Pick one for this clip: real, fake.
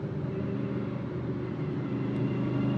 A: real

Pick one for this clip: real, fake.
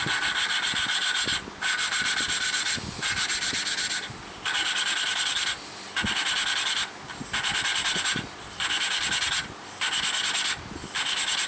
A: real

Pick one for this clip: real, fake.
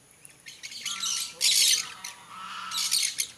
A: real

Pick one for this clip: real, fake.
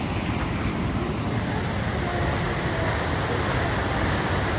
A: real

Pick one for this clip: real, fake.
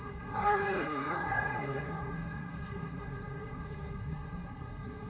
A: fake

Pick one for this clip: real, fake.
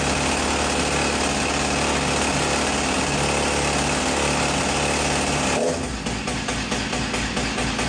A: real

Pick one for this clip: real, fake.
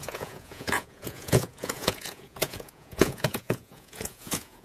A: fake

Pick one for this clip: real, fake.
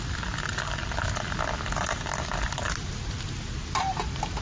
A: real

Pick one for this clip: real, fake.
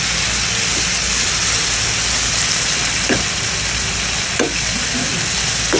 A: real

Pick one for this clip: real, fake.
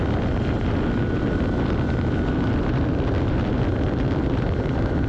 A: real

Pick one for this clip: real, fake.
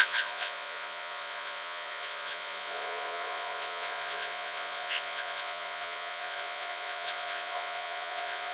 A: fake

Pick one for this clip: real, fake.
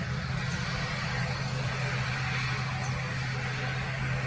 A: fake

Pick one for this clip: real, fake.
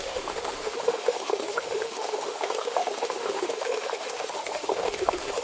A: fake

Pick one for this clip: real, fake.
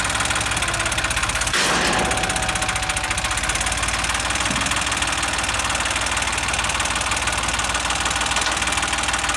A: real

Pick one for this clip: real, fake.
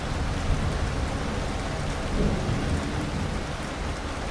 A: real